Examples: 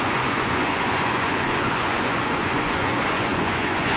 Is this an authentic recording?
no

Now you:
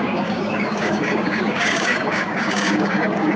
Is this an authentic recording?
no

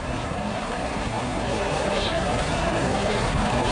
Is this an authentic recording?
no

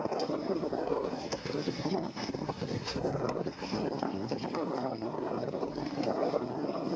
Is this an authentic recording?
no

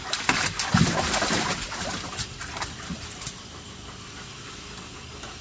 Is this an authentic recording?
yes